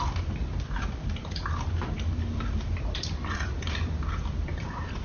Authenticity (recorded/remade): remade